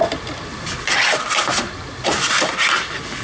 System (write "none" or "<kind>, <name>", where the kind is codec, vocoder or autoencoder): none